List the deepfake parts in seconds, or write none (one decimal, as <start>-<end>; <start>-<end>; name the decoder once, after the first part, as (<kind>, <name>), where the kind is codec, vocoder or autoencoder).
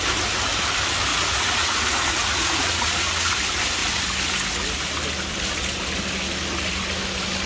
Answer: 1.1-3.3 (vocoder, Vocos)